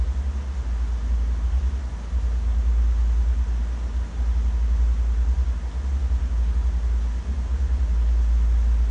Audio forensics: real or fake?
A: real